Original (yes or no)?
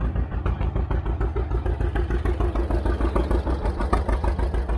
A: yes